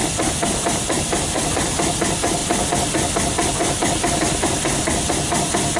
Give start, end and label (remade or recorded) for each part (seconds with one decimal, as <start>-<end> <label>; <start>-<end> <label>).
0.0-5.8 recorded